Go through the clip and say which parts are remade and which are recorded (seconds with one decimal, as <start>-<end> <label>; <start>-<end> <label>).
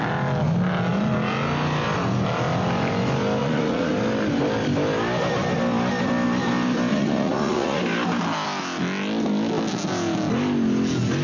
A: 0.0-3.4 recorded; 3.4-3.9 remade; 3.9-6.9 recorded; 6.9-7.8 remade; 7.8-11.2 recorded